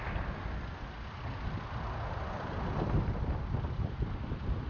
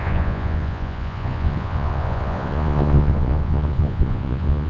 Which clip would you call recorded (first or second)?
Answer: first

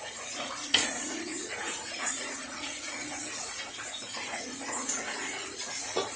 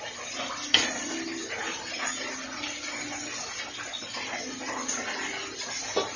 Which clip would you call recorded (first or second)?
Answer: second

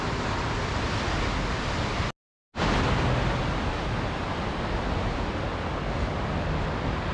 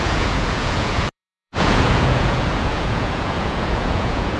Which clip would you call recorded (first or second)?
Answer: first